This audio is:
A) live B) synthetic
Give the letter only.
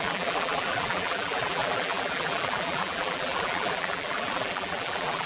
B